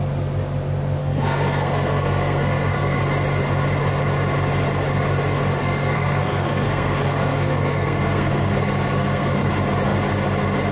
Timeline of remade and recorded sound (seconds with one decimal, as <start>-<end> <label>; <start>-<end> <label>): 0.0-1.0 recorded; 1.0-3.0 remade; 3.0-5.6 recorded; 5.6-9.5 remade; 9.5-10.7 recorded